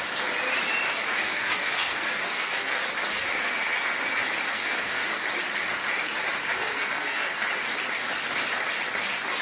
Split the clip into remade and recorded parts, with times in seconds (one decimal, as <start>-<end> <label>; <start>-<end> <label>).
0.0-1.2 recorded; 1.2-2.8 remade; 2.8-4.5 recorded; 4.5-5.2 remade; 5.2-6.4 recorded; 6.4-7.5 remade; 7.5-9.4 recorded